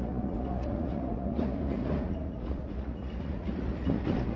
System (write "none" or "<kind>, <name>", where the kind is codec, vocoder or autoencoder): vocoder, Vocos